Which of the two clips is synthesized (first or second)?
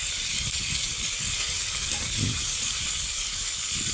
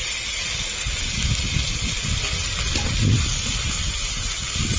first